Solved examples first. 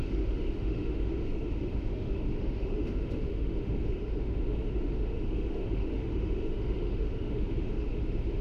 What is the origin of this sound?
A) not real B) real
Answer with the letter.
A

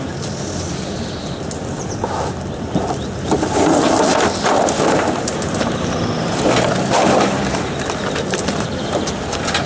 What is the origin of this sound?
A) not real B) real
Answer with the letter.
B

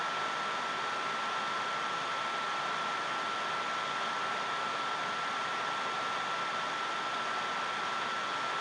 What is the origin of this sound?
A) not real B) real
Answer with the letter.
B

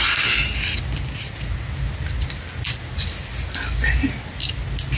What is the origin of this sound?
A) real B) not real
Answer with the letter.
A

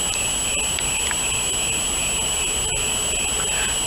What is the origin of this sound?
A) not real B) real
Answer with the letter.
B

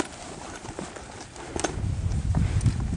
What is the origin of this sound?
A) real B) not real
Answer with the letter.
A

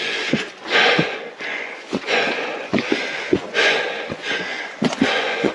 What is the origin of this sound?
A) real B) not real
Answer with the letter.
B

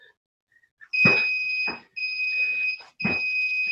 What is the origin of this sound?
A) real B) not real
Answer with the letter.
A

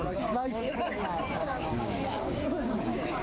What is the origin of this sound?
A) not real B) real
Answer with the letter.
A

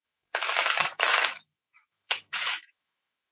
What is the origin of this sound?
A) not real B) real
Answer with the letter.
A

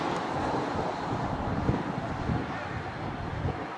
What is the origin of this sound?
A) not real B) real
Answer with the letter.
B